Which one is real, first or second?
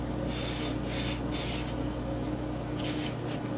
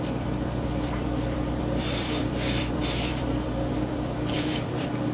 first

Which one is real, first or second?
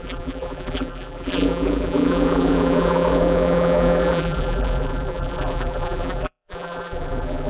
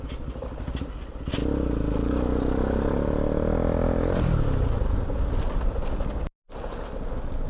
second